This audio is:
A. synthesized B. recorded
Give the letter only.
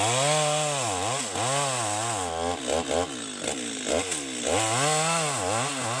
B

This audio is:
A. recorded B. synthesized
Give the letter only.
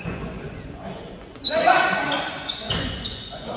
B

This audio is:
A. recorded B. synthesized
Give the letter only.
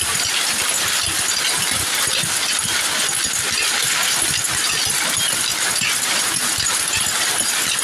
A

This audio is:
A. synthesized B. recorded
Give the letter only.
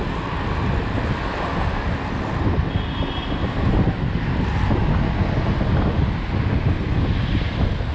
B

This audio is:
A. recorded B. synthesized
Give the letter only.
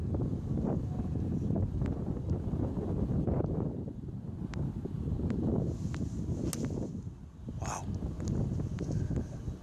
A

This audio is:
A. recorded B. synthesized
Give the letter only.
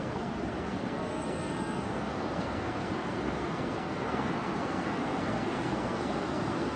B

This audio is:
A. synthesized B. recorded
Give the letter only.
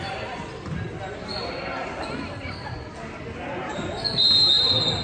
B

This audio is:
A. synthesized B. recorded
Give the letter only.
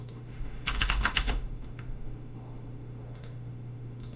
A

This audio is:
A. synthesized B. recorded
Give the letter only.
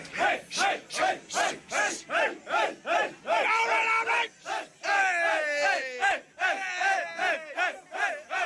B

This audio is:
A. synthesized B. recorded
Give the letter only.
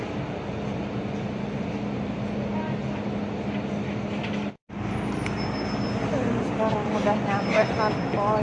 B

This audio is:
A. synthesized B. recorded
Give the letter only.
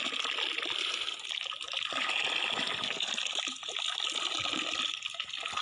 B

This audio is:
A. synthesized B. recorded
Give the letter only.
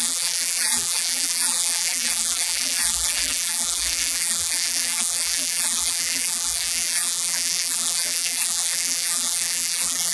A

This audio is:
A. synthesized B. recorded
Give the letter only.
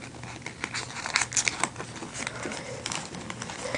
B